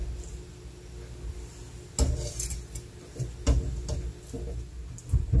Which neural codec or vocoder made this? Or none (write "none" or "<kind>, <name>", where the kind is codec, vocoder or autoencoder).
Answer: none